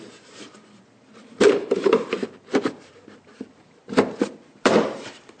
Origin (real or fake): fake